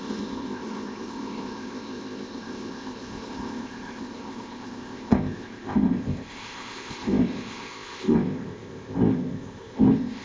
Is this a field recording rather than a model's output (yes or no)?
no